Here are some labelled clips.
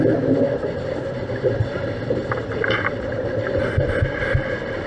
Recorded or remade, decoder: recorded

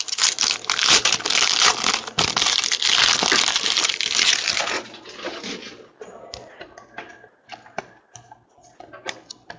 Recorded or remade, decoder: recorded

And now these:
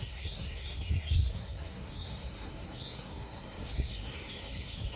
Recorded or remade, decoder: remade, codec, SNAC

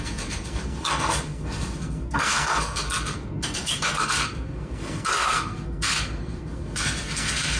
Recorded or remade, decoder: remade, codec, SNAC